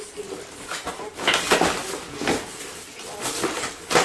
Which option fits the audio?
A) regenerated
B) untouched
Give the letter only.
B